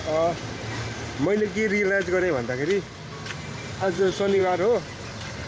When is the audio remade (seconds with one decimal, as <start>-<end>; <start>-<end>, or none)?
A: 3.3-4.4; 5.0-5.5